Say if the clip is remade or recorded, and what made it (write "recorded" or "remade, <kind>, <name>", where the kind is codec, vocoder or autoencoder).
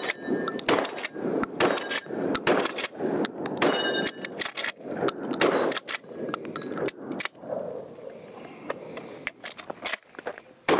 recorded